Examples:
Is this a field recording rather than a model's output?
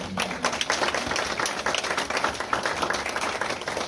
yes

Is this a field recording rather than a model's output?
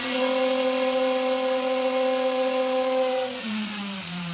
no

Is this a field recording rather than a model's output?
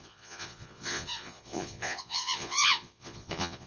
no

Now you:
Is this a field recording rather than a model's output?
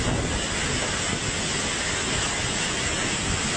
yes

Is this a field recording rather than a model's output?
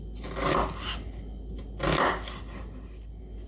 yes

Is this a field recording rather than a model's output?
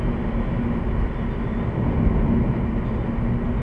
yes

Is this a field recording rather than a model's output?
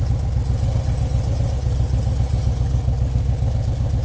yes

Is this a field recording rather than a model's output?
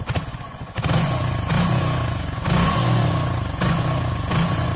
no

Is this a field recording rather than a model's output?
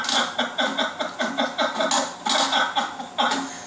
yes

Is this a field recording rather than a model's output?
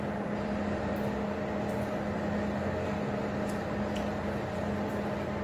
yes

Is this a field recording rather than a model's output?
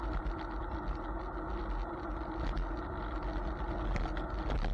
yes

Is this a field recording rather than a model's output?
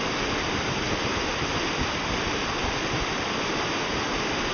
yes